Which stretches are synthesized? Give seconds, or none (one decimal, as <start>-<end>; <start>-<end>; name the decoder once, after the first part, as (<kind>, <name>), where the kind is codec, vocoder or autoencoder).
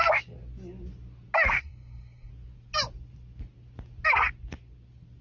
1.6-2.3 (codec, SNAC)